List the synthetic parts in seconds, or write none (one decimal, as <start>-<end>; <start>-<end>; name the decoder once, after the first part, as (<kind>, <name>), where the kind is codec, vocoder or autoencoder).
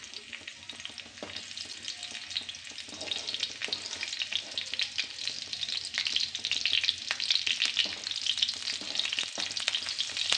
none